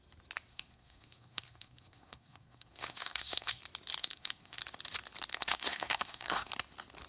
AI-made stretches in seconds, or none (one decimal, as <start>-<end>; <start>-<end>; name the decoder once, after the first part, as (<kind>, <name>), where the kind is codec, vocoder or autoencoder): 0.5-3.6 (codec, SNAC); 4.0-4.6; 5.3-6.5